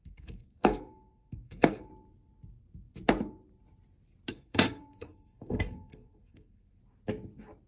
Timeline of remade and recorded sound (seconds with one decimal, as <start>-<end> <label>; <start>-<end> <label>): 0.0-1.9 remade; 1.9-4.3 recorded; 4.3-6.8 remade; 6.8-7.7 recorded